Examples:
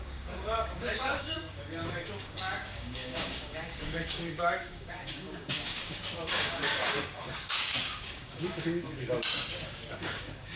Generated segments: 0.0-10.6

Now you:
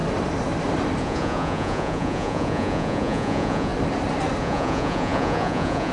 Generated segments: 1.0-3.7; 4.4-5.9

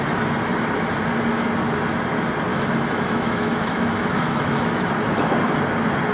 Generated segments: 2.5-4.9

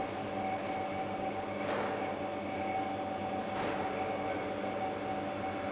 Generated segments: 0.9-1.7

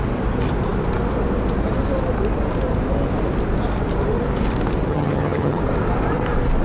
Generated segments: 4.9-5.6

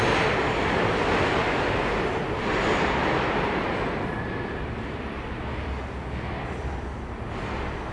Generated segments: none

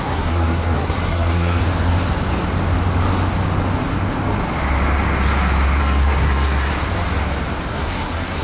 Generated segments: 0.0-1.6; 5.8-6.7; 7.7-8.4